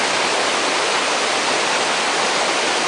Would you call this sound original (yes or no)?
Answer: yes